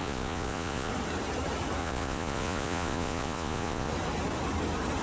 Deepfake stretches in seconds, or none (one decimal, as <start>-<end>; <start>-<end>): 0.0-0.9; 1.8-3.9